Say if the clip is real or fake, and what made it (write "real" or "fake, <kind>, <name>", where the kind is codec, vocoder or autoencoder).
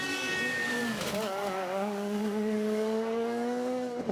fake, codec, DAC